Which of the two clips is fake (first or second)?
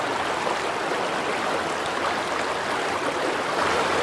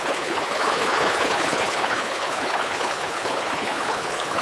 second